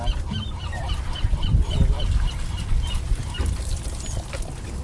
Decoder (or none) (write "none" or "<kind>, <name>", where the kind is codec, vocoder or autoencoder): none